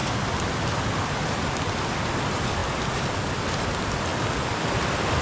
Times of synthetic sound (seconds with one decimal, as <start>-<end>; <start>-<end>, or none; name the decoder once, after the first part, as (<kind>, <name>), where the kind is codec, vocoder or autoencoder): 0.0-2.1 (vocoder, BigVGAN v2); 4.1-5.2